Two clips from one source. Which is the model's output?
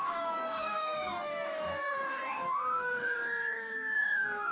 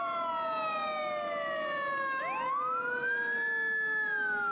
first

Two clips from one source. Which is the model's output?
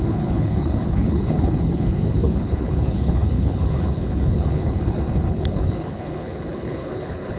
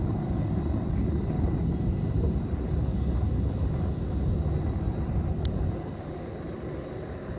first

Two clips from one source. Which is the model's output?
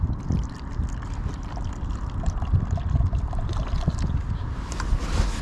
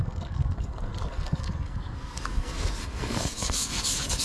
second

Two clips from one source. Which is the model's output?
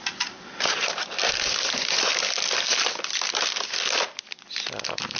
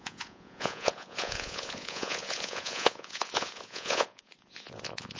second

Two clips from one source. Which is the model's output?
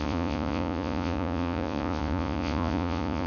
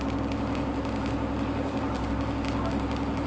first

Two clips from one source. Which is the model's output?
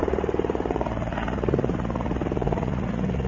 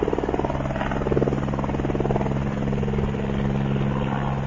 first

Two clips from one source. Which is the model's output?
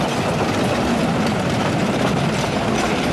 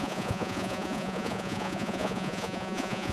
second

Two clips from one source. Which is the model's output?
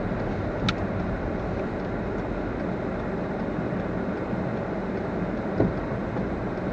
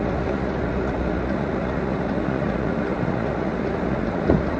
second